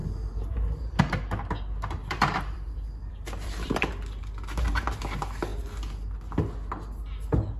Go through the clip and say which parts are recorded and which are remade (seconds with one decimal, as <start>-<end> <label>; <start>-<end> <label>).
0.0-2.0 recorded; 2.0-3.9 remade; 3.9-7.6 recorded